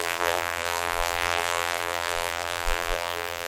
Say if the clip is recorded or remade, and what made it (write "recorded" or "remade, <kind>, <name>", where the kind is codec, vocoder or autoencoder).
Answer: remade, vocoder, BigVGAN v2